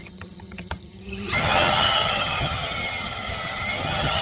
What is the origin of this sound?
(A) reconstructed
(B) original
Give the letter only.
A